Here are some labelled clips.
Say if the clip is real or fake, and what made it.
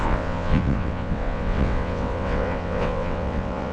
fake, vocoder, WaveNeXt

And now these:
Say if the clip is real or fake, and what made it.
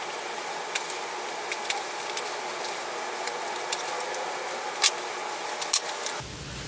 real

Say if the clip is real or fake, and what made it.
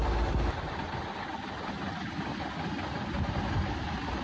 real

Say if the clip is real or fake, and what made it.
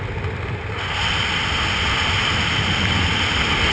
real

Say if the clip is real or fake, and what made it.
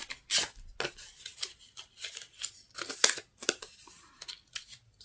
real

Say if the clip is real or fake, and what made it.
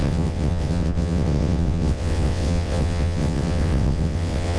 fake, vocoder, WaveNeXt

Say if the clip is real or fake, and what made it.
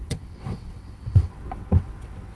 fake, vocoder, WaveNeXt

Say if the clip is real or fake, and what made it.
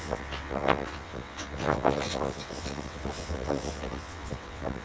fake, vocoder, WaveNeXt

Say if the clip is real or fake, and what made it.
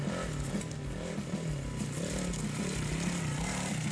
real